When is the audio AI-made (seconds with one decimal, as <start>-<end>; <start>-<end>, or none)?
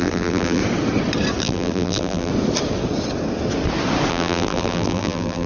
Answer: 0.0-0.6; 1.4-2.3; 4.1-5.5